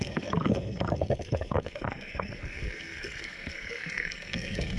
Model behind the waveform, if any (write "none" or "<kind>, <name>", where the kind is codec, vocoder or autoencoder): codec, SNAC